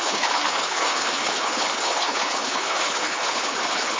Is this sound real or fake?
fake